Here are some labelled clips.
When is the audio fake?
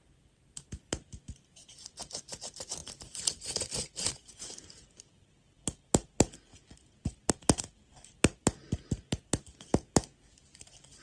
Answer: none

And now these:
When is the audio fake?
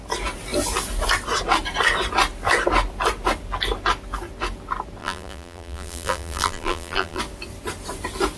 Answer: 5.0-7.2 (vocoder, BigVGAN v2)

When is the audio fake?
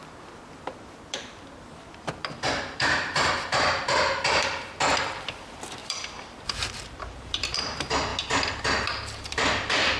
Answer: 0.0-8.1 (vocoder, BigVGAN v2); 8.6-10.0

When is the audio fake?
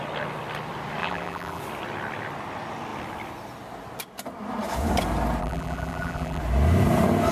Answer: 1.0-1.6 (vocoder, BigVGAN v2); 5.4-6.4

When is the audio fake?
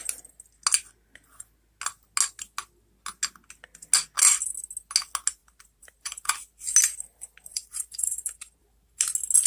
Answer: 5.4-6.4 (vocoder, BigVGAN v2); 7.5-8.6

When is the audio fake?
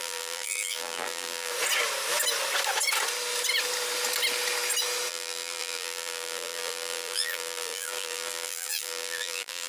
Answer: 0.0-1.5 (vocoder, BigVGAN v2); 5.1-9.7